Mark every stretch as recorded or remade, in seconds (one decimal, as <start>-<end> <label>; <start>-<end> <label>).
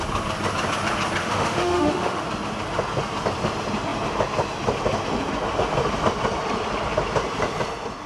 0.0-1.2 recorded; 1.2-2.2 remade; 2.2-8.1 recorded